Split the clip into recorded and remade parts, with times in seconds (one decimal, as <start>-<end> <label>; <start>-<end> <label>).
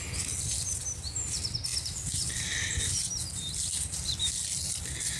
0.0-5.2 recorded